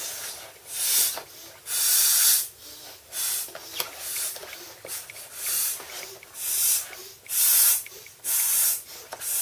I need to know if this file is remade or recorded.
recorded